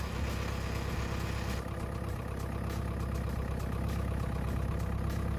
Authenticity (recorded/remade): recorded